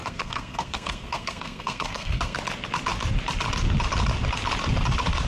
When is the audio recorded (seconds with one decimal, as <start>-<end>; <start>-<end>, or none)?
2.4-5.3